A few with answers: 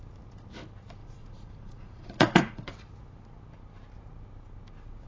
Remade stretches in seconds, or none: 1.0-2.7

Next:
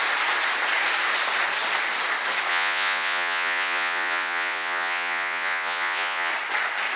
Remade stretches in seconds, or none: 2.5-6.3